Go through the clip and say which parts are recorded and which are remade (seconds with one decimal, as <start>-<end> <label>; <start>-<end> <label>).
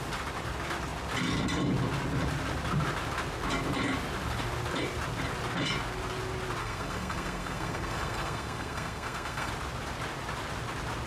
0.0-6.6 recorded; 6.6-9.5 remade; 9.5-11.1 recorded